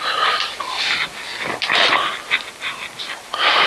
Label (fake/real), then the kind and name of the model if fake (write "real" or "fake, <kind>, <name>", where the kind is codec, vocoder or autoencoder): real